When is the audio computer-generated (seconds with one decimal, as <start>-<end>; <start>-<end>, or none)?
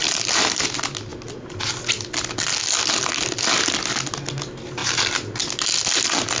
none